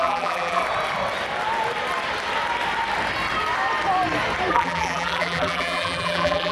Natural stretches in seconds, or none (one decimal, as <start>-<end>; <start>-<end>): 0.6-4.5